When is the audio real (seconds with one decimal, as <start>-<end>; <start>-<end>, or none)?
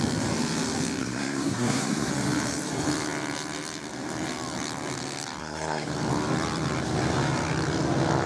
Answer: 0.0-1.0; 2.1-5.4; 5.9-8.3